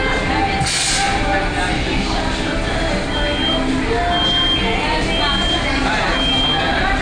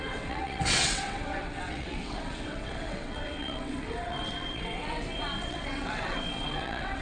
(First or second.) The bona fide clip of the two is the first